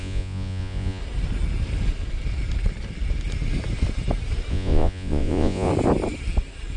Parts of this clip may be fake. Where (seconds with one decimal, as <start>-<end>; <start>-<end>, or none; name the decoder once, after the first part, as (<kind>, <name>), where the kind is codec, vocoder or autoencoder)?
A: 0.0-1.0 (vocoder, Vocos); 4.5-5.7

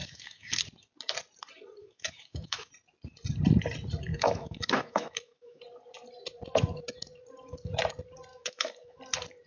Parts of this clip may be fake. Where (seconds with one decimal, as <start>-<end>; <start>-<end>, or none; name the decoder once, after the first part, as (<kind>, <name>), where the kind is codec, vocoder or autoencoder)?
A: 0.0-0.6 (autoencoder, DAC-VAE); 1.8-2.7; 4.1-5.6; 8.3-9.0

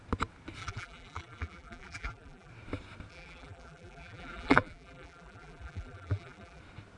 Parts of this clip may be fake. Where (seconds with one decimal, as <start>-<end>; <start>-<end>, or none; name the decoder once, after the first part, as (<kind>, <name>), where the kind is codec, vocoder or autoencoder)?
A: 0.6-2.5 (vocoder, BigVGAN v2); 3.1-6.6

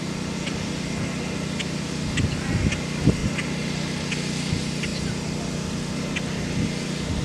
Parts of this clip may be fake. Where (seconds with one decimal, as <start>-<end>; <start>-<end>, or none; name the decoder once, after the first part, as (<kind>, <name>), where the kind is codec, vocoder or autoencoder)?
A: none